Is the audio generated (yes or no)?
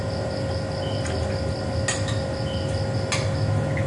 no